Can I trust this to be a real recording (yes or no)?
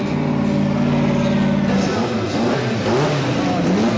yes